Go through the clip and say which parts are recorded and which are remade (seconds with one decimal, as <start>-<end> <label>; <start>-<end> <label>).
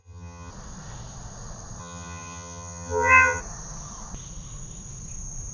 0.0-0.5 remade; 0.5-1.8 recorded; 1.8-3.4 remade; 3.4-5.5 recorded